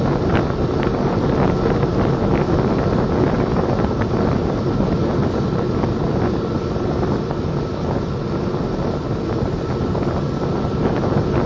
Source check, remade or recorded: recorded